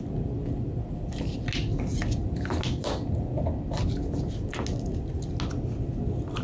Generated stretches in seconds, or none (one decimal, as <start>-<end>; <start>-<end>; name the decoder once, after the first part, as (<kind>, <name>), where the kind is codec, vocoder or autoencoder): none